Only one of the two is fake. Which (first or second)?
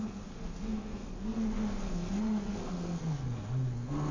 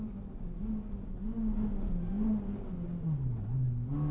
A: first